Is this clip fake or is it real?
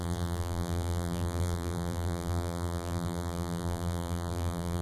fake